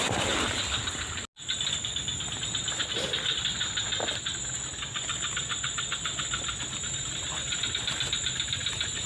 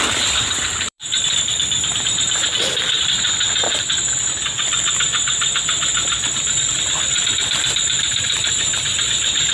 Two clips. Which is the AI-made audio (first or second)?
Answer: second